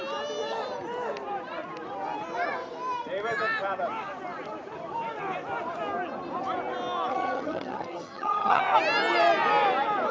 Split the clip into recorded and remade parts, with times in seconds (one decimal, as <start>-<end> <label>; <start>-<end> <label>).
0.0-7.1 recorded; 7.1-8.6 remade; 8.6-10.1 recorded